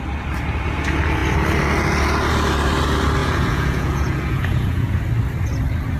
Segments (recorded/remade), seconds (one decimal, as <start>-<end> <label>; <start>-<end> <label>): 0.0-3.2 recorded; 3.2-5.0 remade; 5.0-6.0 recorded